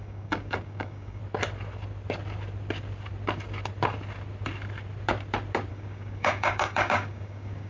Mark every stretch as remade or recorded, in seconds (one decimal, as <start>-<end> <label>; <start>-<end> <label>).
0.0-1.2 remade; 1.2-5.7 recorded; 5.7-7.7 remade